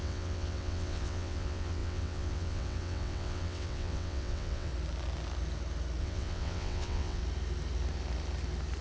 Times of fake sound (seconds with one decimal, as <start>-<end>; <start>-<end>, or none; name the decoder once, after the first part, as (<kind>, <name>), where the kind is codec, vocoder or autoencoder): 0.0-4.7 (vocoder, WaveNeXt); 6.0-7.2